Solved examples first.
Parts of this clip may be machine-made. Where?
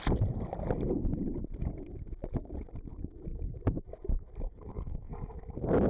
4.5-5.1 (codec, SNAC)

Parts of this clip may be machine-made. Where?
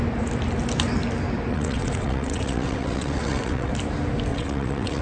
1.5-3.7 (vocoder, WaveNeXt); 4.3-5.0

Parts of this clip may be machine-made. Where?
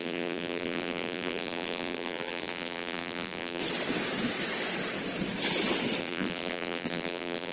0.0-3.6 (vocoder, BigVGAN v2); 6.0-7.5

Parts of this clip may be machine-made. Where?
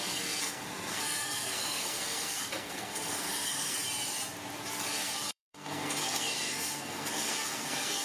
0.0-3.8 (codec, SNAC); 4.7-8.0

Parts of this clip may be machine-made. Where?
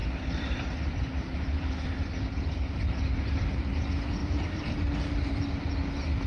0.0-3.8 (vocoder, BigVGAN v2); 4.2-5.6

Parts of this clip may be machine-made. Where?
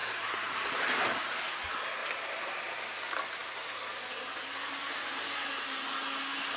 0.0-1.5 (vocoder, BigVGAN v2); 2.0-2.8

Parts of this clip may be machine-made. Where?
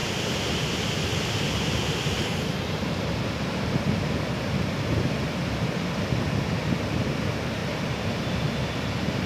1.1-3.7 (vocoder, BigVGAN v2); 7.6-9.3